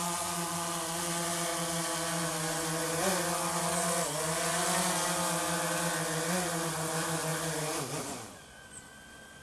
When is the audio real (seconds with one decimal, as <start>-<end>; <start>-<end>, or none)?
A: 1.5-6.7; 7.3-8.0